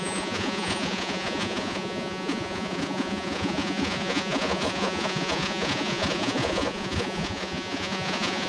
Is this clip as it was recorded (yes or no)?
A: no